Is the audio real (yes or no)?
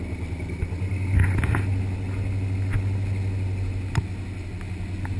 yes